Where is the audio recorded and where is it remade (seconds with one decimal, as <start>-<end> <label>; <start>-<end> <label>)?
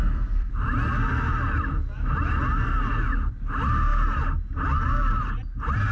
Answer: 0.0-0.5 remade; 0.5-5.9 recorded